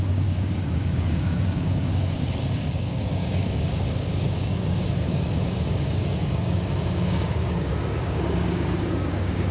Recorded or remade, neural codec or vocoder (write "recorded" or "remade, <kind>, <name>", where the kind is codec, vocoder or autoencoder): remade, codec, DAC